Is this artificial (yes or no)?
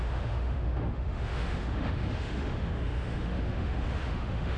yes